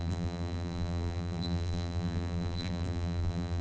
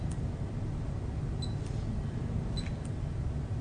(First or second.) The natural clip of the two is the second